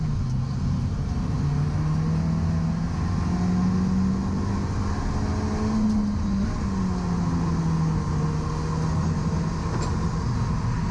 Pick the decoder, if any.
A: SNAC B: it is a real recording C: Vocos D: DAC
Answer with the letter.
B